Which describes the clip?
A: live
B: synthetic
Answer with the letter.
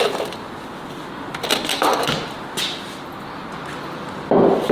A